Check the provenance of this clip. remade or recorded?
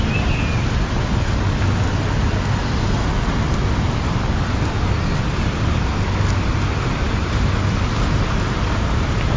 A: recorded